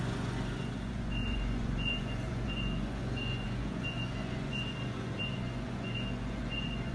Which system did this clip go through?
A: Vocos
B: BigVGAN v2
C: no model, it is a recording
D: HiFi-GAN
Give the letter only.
A